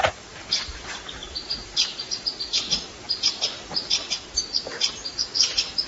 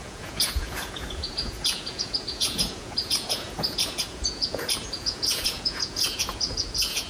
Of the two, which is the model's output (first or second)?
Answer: second